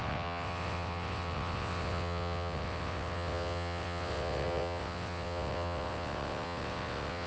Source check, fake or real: fake